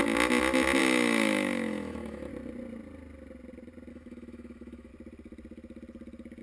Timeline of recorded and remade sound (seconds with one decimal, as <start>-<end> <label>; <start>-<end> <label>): 0.0-0.8 recorded; 0.8-2.3 remade; 2.3-3.9 recorded; 3.9-4.9 remade; 4.9-6.4 recorded